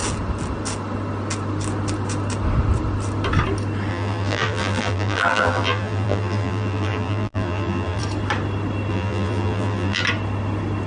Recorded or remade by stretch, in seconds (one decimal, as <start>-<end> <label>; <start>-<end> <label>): 0.0-3.9 recorded; 3.9-8.0 remade; 8.0-8.9 recorded; 8.9-10.0 remade; 10.0-10.9 recorded